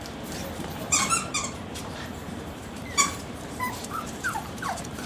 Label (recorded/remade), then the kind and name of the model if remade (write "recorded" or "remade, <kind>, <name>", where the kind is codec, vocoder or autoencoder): remade, vocoder, BigVGAN v2